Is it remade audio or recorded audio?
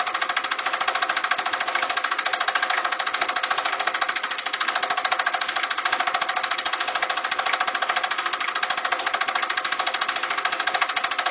recorded